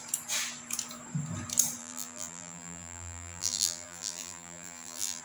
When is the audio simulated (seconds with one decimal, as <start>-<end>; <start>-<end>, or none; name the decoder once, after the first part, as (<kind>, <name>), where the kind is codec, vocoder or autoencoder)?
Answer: 1.8-5.2 (vocoder, BigVGAN v2)